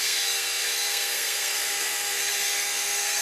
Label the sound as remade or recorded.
remade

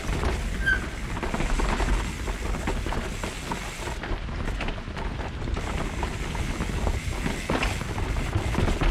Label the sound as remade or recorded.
recorded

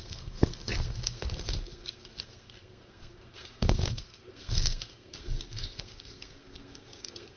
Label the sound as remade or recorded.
remade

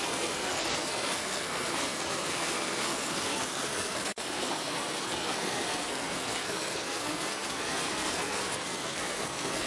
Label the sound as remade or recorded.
remade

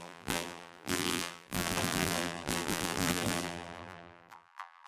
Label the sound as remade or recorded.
remade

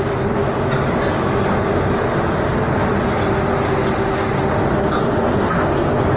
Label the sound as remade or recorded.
recorded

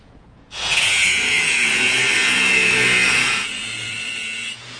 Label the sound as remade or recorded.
remade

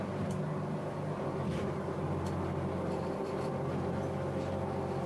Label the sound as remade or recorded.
recorded